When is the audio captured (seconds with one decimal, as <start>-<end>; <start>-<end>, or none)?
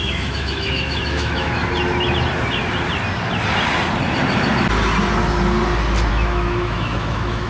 1.6-6.1